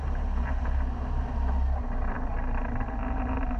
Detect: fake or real fake